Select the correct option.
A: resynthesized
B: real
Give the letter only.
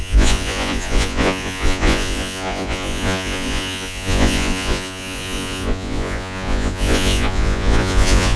A